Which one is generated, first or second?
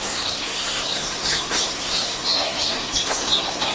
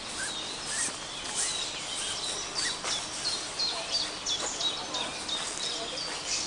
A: first